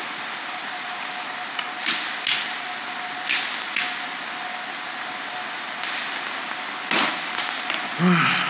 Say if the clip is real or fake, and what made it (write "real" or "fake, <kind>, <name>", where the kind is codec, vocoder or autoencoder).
real